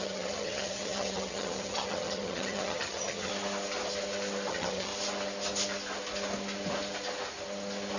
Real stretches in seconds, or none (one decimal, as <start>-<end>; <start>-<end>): 3.3-4.5; 4.9-8.0